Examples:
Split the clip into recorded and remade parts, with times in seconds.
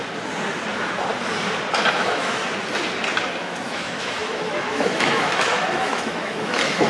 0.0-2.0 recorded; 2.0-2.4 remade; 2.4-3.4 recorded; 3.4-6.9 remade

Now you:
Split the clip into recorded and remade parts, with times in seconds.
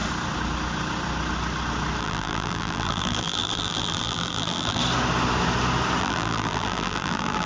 0.0-2.0 recorded; 2.0-4.8 remade; 4.8-6.0 recorded; 6.0-7.5 remade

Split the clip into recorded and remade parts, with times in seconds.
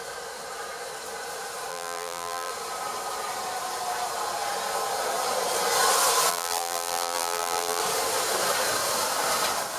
0.0-1.7 recorded; 1.7-2.5 remade; 2.5-6.3 recorded; 6.3-7.8 remade; 7.8-9.8 recorded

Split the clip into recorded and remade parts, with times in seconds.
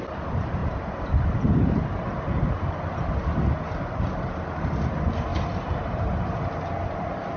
0.0-0.6 recorded; 0.6-2.6 remade; 2.6-5.3 recorded; 5.3-7.4 remade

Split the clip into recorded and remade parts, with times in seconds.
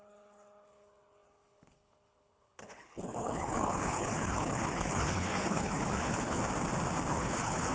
0.0-6.4 remade; 6.4-7.1 recorded; 7.1-7.7 remade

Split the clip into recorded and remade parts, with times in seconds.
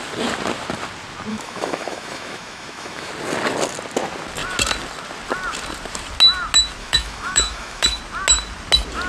0.0-1.3 recorded; 1.3-3.1 remade; 3.1-6.8 recorded; 6.8-8.0 remade; 8.0-9.1 recorded